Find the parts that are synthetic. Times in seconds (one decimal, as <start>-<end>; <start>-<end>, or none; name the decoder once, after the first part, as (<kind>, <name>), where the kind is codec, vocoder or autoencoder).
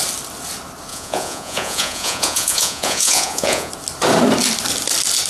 0.9-3.7 (vocoder, Vocos)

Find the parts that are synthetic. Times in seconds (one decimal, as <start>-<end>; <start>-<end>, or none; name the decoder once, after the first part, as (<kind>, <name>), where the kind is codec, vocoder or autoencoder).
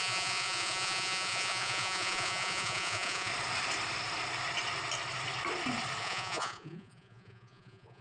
0.0-3.3 (vocoder, Vocos); 6.0-8.0